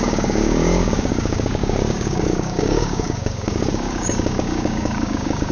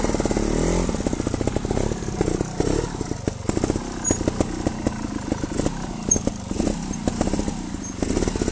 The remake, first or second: first